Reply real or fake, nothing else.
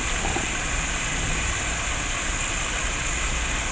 real